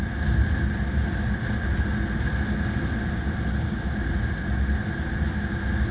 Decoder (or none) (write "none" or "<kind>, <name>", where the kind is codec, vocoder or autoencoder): none